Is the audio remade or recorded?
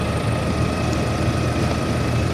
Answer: remade